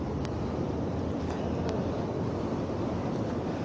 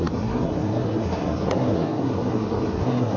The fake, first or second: second